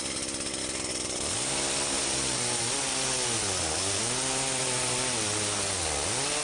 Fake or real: real